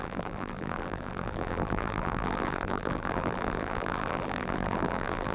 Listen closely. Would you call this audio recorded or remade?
remade